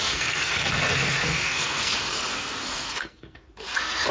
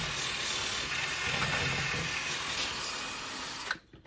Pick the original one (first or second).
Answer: second